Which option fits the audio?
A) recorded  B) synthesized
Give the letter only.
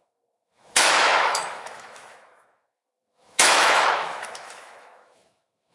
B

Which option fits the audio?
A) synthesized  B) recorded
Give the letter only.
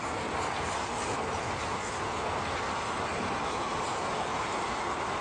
B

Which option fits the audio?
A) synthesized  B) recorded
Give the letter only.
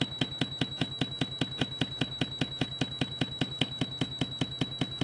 B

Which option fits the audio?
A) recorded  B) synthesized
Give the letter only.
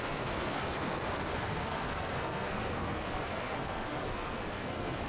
B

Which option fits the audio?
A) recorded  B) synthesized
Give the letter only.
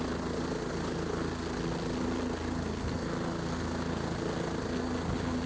A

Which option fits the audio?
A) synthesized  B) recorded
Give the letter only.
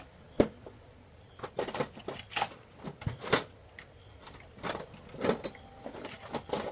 B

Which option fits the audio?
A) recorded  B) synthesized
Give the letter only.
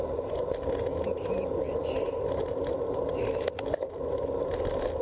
A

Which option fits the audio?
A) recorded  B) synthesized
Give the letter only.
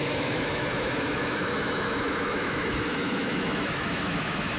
B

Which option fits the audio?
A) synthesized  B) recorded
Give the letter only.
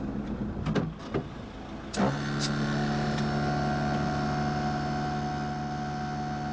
B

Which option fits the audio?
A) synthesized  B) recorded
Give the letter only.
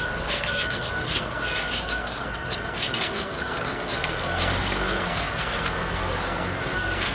A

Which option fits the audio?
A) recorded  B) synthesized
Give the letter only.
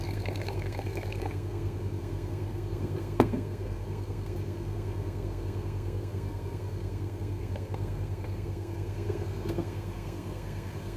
B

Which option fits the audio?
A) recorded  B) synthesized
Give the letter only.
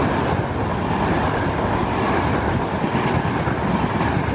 A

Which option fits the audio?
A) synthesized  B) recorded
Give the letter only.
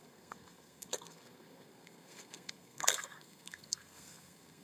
A